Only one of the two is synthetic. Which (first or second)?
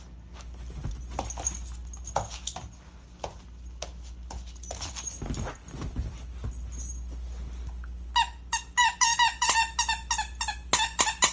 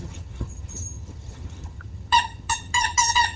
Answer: second